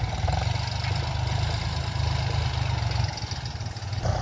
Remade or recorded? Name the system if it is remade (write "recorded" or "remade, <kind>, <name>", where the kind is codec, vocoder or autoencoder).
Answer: recorded